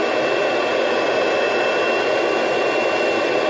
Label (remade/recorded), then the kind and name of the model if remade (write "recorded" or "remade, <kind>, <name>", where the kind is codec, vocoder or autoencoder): recorded